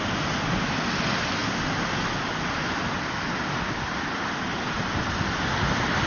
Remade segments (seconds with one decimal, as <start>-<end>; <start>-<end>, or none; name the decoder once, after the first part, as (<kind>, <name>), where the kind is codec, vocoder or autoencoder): none

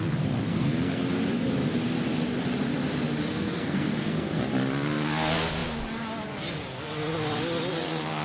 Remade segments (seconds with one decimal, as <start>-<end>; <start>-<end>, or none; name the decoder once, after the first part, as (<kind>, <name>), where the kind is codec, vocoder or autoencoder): 0.5-1.0 (codec, SNAC); 3.3-4.4

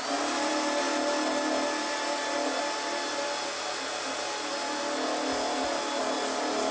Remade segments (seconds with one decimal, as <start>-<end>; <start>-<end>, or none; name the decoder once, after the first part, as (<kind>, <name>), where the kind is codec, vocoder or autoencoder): none

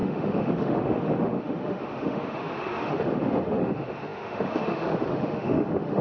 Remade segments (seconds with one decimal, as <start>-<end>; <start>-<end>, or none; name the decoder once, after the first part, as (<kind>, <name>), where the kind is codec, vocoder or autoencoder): 0.0-6.0 (autoencoder, DAC-VAE)

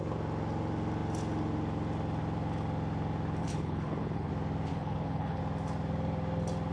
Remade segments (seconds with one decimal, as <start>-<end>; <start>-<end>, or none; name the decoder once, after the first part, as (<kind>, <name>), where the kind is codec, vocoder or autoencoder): 3.4-4.3 (codec, HILCodec); 4.7-5.4